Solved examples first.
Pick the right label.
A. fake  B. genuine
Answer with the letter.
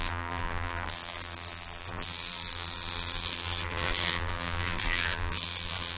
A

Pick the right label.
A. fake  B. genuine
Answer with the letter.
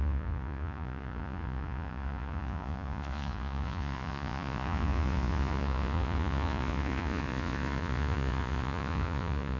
A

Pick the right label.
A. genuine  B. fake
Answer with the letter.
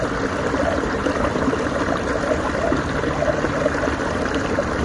B